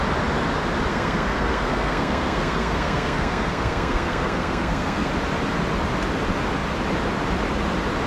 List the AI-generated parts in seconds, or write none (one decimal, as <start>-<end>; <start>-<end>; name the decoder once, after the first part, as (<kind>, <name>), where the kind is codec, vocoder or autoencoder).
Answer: 0.9-5.1 (codec, SNAC)